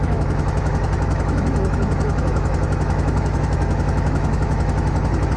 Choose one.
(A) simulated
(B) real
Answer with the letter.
A